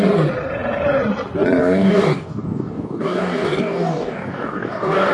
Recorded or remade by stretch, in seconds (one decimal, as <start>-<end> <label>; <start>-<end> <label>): 0.0-1.6 recorded; 1.6-5.1 remade